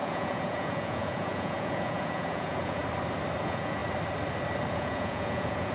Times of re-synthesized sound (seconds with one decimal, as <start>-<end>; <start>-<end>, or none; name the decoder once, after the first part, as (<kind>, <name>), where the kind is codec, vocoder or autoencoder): 0.0-2.8 (vocoder, Vocos); 3.4-3.8; 4.7-5.7